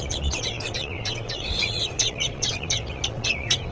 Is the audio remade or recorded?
remade